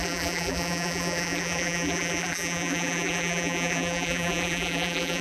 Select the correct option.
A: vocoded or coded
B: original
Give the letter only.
A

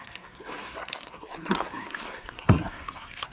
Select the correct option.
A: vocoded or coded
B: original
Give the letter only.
A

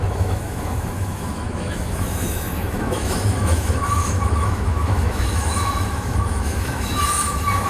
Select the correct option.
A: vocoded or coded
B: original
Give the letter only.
A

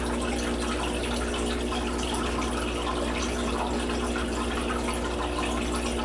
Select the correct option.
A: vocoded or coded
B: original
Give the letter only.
B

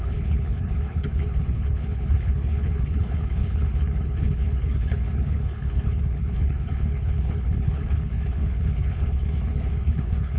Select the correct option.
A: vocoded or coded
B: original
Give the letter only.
A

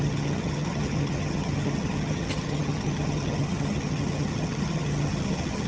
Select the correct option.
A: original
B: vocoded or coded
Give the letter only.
B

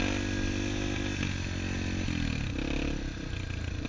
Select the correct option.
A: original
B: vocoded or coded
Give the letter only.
A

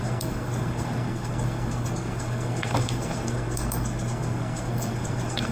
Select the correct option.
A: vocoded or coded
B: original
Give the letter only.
A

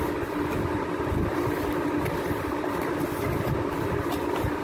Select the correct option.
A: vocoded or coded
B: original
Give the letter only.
B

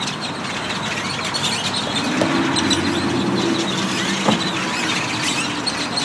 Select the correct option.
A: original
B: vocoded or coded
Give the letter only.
A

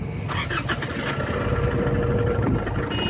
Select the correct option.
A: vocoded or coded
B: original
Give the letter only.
B